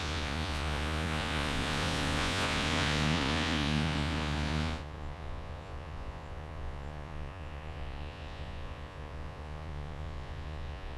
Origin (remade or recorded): remade